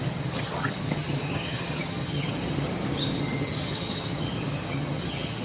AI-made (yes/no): yes